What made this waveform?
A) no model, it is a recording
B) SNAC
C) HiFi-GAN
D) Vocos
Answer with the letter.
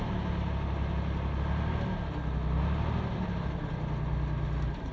A